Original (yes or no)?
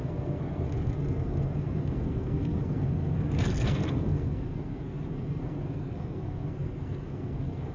no